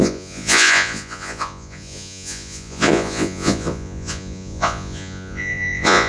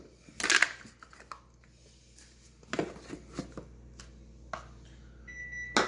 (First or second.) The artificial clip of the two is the first